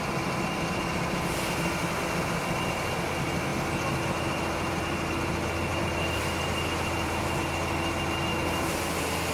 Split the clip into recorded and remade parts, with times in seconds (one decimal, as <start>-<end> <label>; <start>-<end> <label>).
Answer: 0.0-5.7 recorded; 5.7-6.2 remade; 6.2-9.3 recorded